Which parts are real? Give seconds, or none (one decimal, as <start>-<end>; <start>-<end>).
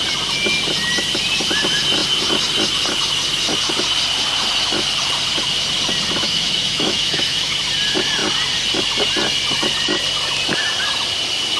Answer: 0.0-6.2; 7.6-11.6